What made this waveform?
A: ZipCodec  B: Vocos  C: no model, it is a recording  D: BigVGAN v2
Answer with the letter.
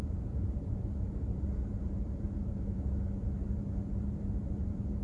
D